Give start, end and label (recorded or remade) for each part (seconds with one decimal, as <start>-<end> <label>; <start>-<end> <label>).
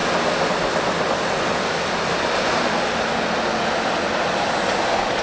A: 0.0-5.2 recorded